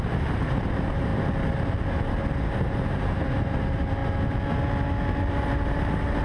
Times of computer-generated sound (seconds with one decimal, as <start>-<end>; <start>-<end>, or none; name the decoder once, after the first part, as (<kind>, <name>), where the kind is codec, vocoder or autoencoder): 0.0-1.1 (vocoder, BigVGAN v2); 2.5-4.0; 5.3-6.2